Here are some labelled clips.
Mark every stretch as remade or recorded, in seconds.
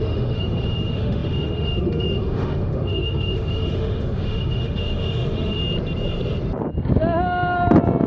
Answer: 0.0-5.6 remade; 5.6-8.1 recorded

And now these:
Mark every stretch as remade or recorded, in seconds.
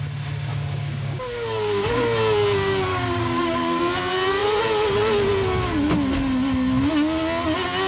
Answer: 0.0-0.5 recorded; 0.5-2.0 remade; 2.0-2.9 recorded; 2.9-3.8 remade; 3.8-7.9 recorded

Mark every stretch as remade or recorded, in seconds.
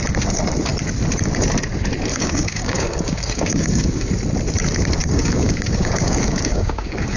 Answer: 0.0-2.1 recorded; 2.1-4.1 remade; 4.1-5.0 recorded; 5.0-7.2 remade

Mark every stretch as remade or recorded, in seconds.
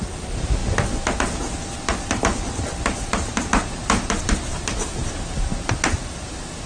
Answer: 0.0-6.7 recorded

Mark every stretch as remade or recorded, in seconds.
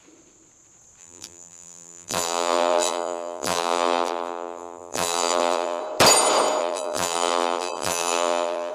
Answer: 0.0-1.0 recorded; 1.0-5.8 remade; 5.8-6.6 recorded; 6.6-8.7 remade